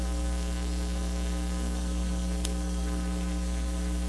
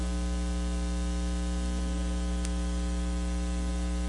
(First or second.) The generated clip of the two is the first